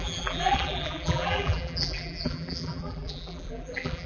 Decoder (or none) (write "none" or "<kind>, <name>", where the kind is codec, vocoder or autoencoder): vocoder, BigVGAN v2